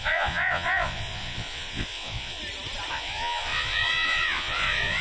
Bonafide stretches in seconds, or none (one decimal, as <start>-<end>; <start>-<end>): 2.4-2.9